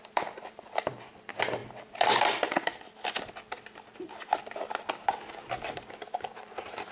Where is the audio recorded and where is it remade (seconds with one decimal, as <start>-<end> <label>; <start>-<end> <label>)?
0.0-1.6 remade; 1.6-5.7 recorded; 5.7-6.9 remade